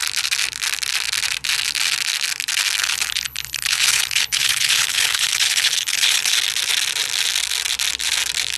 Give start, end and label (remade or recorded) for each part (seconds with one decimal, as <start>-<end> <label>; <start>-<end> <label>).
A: 0.0-2.8 recorded; 2.8-6.3 remade; 6.3-8.6 recorded